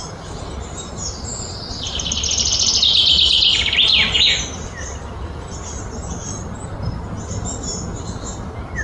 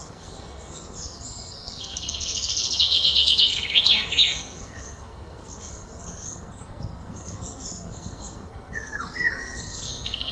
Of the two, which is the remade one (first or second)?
second